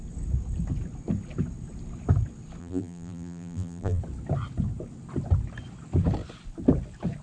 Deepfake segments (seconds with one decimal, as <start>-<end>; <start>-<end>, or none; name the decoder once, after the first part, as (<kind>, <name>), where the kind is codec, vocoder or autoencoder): 2.6-4.0 (vocoder, BigVGAN v2)